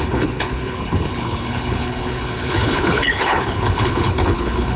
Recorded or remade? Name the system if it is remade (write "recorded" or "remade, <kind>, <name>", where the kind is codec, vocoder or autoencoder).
remade, codec, HILCodec